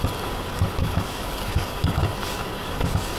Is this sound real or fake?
fake